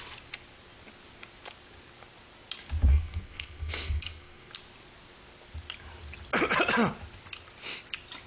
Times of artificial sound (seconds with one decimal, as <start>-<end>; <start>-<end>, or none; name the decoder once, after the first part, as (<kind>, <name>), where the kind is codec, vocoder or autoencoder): 2.9-4.5 (codec, SNAC)